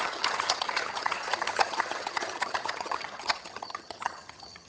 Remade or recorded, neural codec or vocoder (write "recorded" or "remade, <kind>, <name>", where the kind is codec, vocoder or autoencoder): remade, vocoder, HiFi-GAN